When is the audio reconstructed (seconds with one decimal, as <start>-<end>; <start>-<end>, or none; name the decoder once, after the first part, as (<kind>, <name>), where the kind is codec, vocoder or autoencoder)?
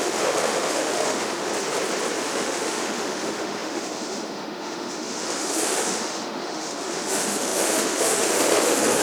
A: 0.0-1.5 (autoencoder, DAC-VAE); 2.2-9.0